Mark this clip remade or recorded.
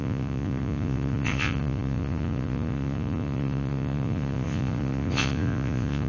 remade